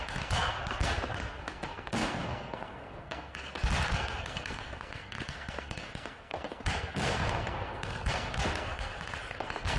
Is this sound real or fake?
fake